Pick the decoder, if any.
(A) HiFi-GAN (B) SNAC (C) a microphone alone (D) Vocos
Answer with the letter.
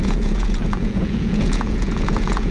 D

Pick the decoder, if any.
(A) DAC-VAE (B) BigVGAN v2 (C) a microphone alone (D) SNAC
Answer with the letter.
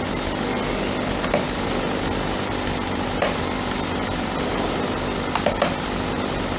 C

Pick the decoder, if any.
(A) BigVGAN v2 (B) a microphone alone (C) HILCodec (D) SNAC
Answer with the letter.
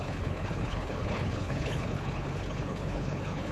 C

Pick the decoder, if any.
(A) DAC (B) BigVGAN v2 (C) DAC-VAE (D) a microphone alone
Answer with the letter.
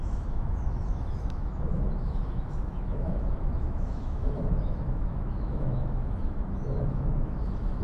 C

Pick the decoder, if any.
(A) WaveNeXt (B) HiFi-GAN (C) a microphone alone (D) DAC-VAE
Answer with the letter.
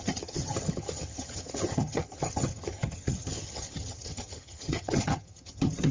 B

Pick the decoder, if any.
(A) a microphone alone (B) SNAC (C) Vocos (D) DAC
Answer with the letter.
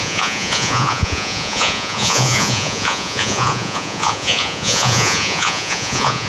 C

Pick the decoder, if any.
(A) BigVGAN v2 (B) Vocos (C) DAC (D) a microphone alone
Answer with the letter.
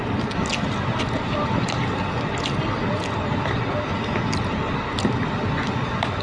D